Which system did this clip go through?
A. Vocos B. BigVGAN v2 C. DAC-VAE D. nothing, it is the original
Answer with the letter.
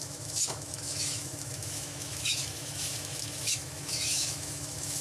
C